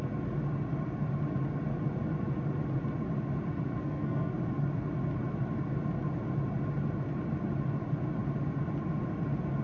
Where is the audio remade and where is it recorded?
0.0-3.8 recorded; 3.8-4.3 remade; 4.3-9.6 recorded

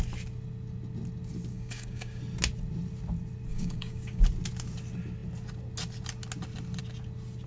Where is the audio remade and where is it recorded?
0.0-1.5 recorded; 1.5-2.2 remade; 2.2-3.5 recorded; 3.5-4.2 remade; 4.2-7.5 recorded

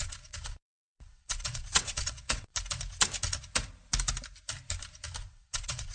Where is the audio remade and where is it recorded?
0.0-2.5 remade; 2.5-5.3 recorded; 5.3-5.9 remade

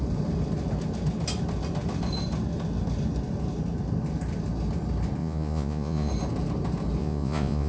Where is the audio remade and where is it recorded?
0.0-5.2 recorded; 5.2-6.1 remade; 6.1-7.0 recorded; 7.0-7.7 remade

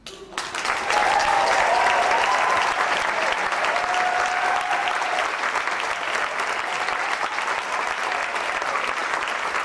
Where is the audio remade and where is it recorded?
0.0-9.6 recorded

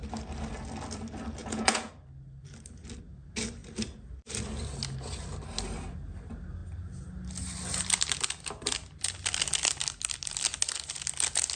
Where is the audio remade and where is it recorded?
0.0-1.4 recorded; 1.4-1.9 remade; 1.9-11.6 recorded

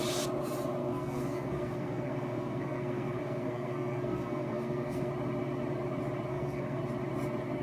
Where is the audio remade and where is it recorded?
0.0-0.8 recorded; 0.8-5.1 remade; 5.1-6.3 recorded; 6.3-6.8 remade; 6.8-7.6 recorded